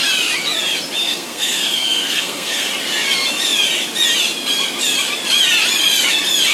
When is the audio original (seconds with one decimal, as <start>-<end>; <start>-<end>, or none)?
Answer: 0.0-1.0; 2.7-6.5

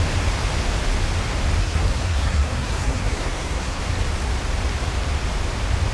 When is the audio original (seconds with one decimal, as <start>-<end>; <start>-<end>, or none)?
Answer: 0.0-1.6; 3.8-5.9

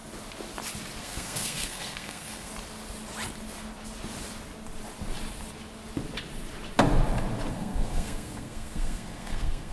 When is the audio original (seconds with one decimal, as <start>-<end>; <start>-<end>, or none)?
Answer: 0.0-1.0; 2.5-7.5

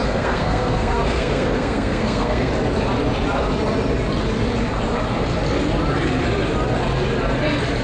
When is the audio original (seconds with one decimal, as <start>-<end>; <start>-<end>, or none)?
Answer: 2.5-7.8